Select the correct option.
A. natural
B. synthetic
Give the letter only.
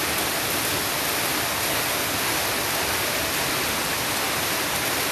A